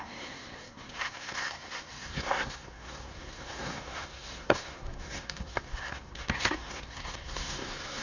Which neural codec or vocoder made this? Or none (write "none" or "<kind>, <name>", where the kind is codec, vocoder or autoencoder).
codec, SNAC